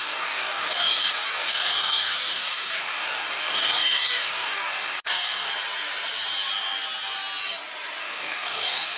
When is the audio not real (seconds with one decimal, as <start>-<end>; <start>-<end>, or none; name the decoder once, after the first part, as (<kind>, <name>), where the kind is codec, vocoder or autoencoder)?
0.0-5.5 (codec, DAC); 8.0-9.0